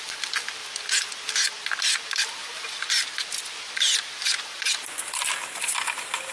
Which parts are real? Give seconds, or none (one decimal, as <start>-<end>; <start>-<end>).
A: 0.0-6.3